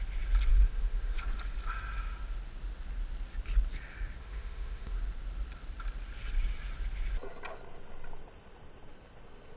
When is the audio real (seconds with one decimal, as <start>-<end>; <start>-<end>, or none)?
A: 0.0-0.5; 1.2-4.2; 5.0-9.6